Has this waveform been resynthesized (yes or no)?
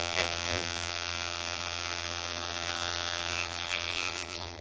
yes